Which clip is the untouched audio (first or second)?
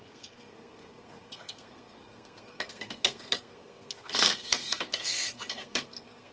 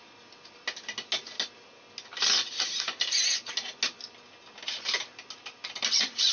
second